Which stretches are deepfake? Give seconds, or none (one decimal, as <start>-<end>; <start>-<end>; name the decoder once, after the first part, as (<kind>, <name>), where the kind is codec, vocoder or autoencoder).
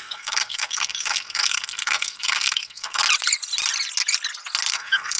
0.0-3.0 (codec, SNAC); 4.7-5.2